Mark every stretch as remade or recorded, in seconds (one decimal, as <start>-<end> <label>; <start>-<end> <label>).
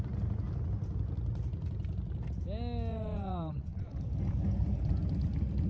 0.0-2.9 recorded; 2.9-4.0 remade; 4.0-5.7 recorded